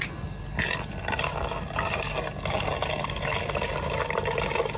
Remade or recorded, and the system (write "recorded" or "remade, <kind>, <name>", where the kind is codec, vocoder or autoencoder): recorded